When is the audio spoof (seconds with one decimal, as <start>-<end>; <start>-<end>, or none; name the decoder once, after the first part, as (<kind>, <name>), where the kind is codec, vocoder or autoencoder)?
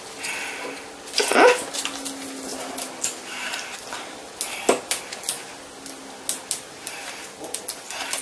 none